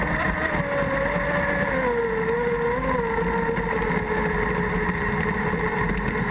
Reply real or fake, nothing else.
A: real